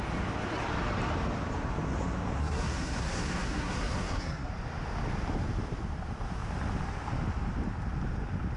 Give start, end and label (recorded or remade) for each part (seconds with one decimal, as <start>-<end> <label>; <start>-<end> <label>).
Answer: 0.0-2.4 recorded; 2.4-4.5 remade; 4.5-8.6 recorded